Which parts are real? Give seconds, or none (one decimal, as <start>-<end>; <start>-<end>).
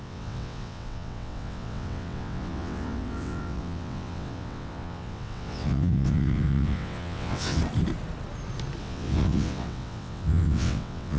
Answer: 7.6-8.8